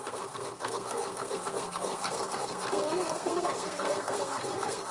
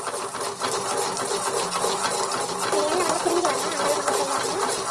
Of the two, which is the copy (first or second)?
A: first